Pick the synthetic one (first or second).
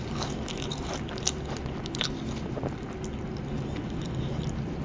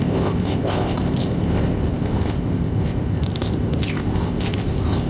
second